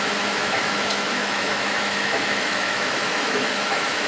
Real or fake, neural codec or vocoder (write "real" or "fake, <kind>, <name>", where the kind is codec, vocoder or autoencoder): fake, autoencoder, DAC-VAE